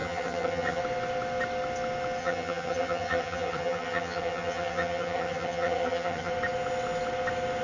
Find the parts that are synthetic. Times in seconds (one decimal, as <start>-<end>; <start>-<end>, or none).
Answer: 0.0-0.8; 2.2-6.3